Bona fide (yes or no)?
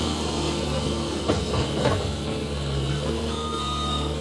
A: no